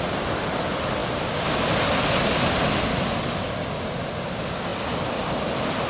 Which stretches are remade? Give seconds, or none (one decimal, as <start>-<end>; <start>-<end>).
none